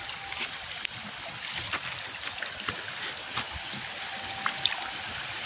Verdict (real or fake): real